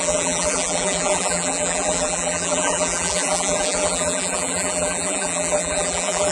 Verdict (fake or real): fake